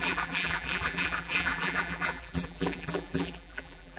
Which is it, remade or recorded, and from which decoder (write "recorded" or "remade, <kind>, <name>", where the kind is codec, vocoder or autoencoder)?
remade, vocoder, BigVGAN v2